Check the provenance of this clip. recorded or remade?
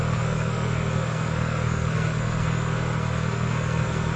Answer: remade